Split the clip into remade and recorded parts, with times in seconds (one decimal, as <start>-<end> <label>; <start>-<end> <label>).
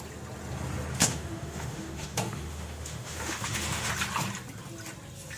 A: 0.0-0.9 recorded; 0.9-3.9 remade; 3.9-5.4 recorded